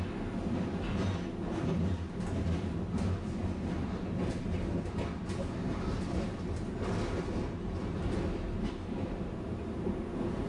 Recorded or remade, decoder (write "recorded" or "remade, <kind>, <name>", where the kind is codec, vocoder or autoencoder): recorded